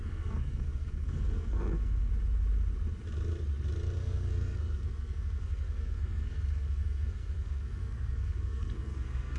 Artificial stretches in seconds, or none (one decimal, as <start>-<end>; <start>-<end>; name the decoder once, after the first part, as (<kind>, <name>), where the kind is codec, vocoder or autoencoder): 0.0-2.1 (codec, SNAC); 4.0-9.4